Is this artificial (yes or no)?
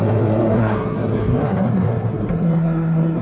yes